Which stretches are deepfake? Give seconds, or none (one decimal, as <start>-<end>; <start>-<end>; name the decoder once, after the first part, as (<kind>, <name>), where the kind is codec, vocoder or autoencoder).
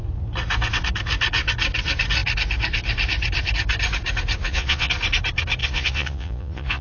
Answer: 4.4-4.9 (vocoder, Vocos); 5.6-6.8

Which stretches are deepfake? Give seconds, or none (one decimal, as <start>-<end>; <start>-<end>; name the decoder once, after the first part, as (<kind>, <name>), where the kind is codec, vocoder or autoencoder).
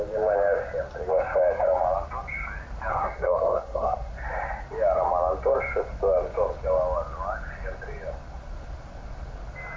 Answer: 2.9-4.1 (codec, SNAC)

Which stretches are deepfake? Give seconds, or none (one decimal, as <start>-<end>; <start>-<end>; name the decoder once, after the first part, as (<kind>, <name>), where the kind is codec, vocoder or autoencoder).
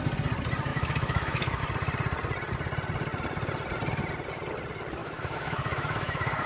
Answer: 0.7-1.6 (autoencoder, DAC-VAE); 5.0-6.5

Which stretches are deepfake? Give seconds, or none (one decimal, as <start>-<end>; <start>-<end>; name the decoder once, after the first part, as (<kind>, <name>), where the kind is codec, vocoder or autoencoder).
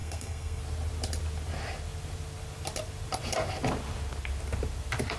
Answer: 0.0-0.6 (codec, SNAC)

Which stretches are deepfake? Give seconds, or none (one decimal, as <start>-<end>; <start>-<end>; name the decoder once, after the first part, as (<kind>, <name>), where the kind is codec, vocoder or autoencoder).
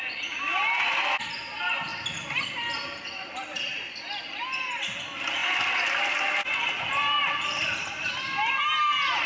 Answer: none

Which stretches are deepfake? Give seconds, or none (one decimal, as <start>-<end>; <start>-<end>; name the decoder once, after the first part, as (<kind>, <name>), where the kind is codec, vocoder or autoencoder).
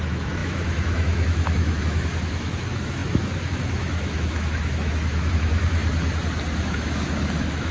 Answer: 0.0-5.8 (autoencoder, DAC-VAE); 6.6-7.7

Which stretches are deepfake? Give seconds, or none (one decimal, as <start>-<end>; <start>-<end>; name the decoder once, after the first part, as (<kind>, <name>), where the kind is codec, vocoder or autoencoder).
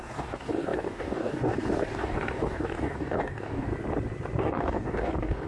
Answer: 0.0-3.7 (codec, DAC); 4.4-5.5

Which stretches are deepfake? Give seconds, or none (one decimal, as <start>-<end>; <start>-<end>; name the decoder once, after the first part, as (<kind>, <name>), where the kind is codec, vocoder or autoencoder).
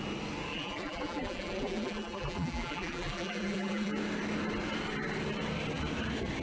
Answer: 0.5-3.9 (vocoder, BigVGAN v2)